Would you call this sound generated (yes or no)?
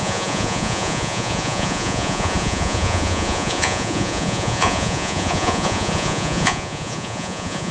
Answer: yes